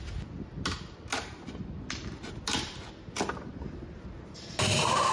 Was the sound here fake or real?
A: real